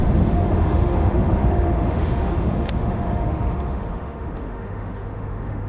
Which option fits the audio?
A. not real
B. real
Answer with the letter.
A